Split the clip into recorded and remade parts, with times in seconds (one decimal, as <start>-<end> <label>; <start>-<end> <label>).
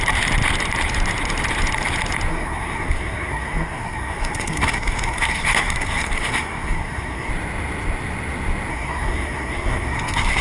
0.0-2.3 recorded; 2.3-7.3 remade; 7.3-8.7 recorded; 8.7-10.4 remade